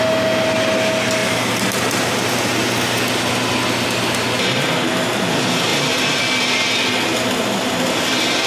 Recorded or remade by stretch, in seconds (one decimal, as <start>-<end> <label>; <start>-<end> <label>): 0.0-8.5 recorded